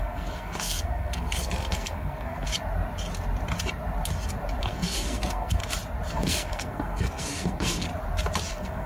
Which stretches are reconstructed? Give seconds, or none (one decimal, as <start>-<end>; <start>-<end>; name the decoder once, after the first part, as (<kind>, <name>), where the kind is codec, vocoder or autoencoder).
0.0-2.5 (codec, SNAC); 4.6-5.6; 6.1-7.9; 8.5-8.9